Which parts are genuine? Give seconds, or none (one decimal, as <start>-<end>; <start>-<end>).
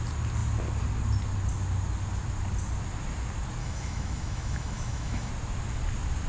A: 0.0-3.6; 5.3-6.3